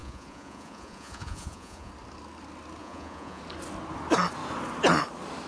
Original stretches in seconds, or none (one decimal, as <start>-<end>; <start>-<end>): 1.9-2.8; 3.4-5.5